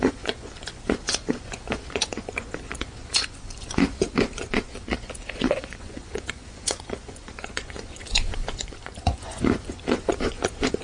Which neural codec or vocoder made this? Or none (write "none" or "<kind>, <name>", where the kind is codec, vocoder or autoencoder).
vocoder, Vocos